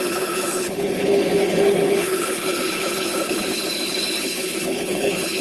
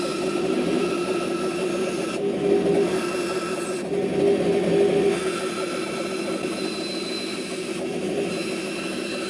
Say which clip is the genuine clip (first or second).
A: second